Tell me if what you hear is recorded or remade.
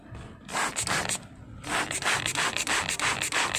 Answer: recorded